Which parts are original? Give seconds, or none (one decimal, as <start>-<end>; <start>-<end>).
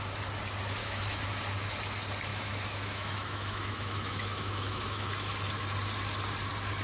0.0-0.8; 1.4-2.3; 5.1-6.8